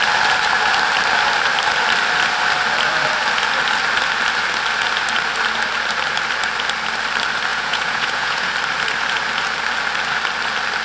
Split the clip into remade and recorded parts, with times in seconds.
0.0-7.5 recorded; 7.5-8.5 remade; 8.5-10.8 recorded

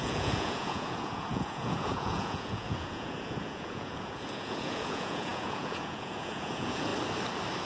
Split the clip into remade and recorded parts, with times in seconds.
0.0-6.9 remade; 6.9-7.6 recorded

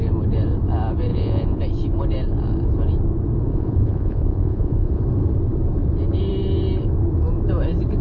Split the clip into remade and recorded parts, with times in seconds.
0.0-1.1 recorded; 1.1-1.6 remade; 1.6-3.5 recorded; 3.5-5.0 remade; 5.0-8.0 recorded

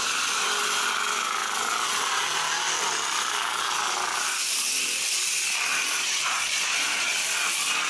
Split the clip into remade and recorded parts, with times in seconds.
0.0-6.0 recorded; 6.0-7.1 remade; 7.1-7.9 recorded

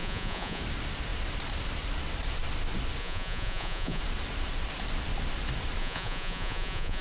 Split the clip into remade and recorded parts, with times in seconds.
0.0-0.6 remade; 0.6-3.0 recorded; 3.0-4.0 remade; 4.0-5.8 recorded; 5.8-7.0 remade

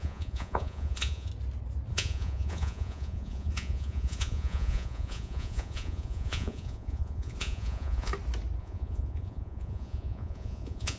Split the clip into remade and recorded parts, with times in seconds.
0.0-1.3 remade; 1.3-1.9 recorded; 1.9-8.1 remade; 8.1-8.6 recorded; 8.6-11.0 remade